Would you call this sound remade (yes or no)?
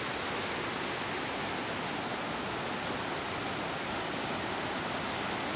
no